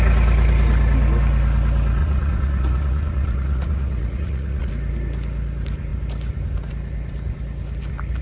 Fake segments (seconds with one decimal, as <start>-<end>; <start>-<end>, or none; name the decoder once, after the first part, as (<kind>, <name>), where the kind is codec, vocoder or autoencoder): 2.0-4.7 (vocoder, Vocos)